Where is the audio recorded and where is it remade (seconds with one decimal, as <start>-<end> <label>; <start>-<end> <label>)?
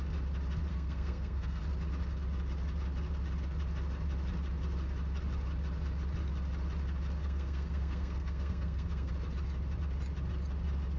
0.0-0.7 recorded; 0.7-1.6 remade; 1.6-7.2 recorded; 7.2-9.1 remade; 9.1-11.0 recorded